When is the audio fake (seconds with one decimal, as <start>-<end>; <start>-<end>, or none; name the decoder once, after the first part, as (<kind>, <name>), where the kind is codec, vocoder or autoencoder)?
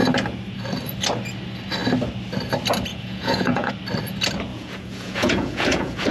2.9-3.7 (vocoder, Vocos); 4.5-6.1